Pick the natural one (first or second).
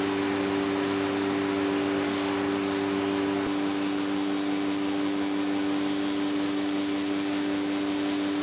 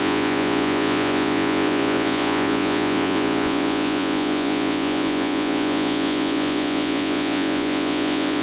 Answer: first